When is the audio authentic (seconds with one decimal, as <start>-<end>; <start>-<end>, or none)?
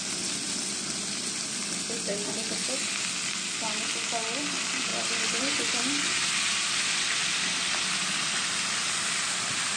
0.0-9.8